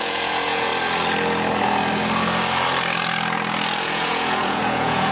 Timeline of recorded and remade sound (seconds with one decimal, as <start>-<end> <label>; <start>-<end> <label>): 0.0-0.7 remade; 0.7-3.8 recorded; 3.8-5.1 remade